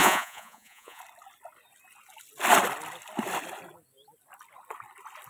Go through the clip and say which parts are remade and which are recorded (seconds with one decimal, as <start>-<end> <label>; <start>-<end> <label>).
0.0-1.0 remade; 1.0-5.3 recorded